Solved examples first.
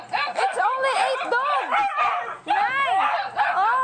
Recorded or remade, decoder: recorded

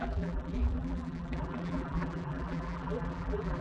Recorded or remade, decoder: remade, vocoder, BigVGAN v2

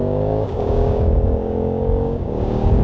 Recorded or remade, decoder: remade, codec, DAC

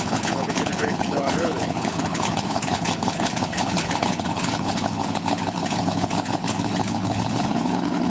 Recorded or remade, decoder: remade, codec, HILCodec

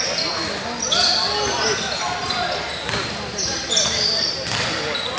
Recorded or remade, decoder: recorded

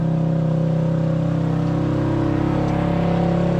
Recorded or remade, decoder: recorded